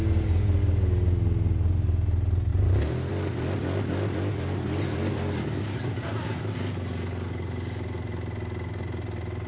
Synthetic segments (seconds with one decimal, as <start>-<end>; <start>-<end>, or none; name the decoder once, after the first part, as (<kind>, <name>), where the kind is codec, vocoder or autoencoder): none